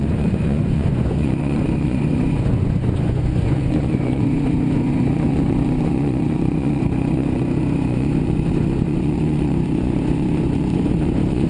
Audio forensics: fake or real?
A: fake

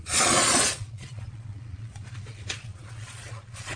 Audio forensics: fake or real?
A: fake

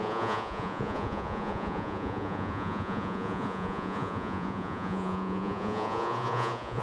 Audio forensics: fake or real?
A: fake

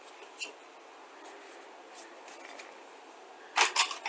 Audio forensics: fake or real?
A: real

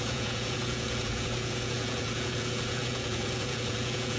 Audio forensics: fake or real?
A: fake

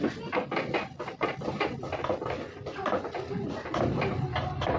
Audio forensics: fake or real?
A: real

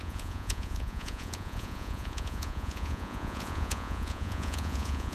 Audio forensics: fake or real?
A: fake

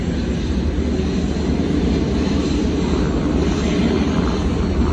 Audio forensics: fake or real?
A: real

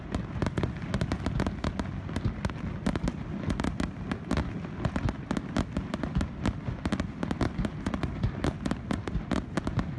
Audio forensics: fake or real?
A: real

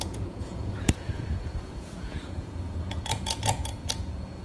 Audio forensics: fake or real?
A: fake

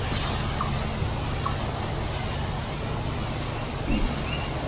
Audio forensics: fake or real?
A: real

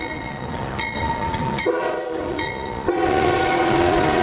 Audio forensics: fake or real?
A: fake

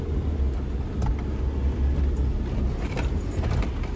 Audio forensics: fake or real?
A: real